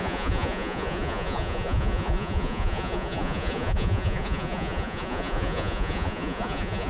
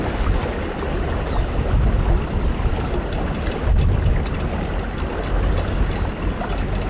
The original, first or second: second